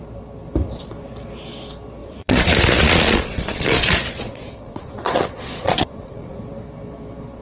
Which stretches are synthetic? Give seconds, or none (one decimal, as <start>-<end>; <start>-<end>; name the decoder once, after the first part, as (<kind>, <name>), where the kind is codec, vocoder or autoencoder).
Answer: 2.0-6.4 (vocoder, Vocos)